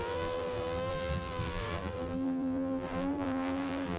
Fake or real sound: fake